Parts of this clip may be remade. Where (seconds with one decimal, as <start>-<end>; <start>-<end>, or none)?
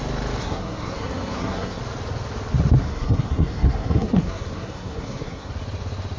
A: 0.4-1.8; 2.8-5.5